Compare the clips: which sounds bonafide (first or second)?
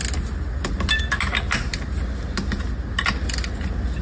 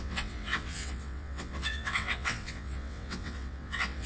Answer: first